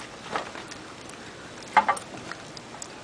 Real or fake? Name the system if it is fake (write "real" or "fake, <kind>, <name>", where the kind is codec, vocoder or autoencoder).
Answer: fake, vocoder, BigVGAN v2